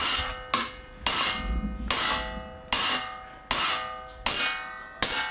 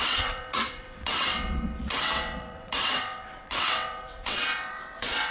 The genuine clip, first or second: first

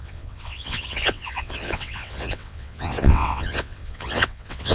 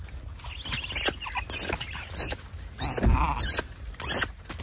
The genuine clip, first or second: second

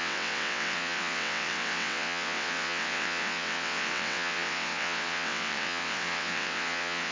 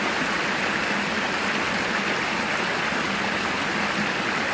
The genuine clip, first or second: second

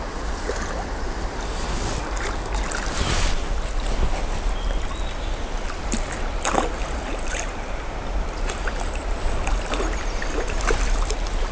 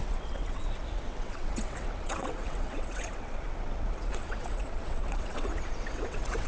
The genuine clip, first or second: first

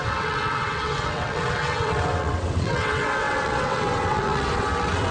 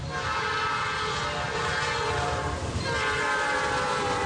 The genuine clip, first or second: second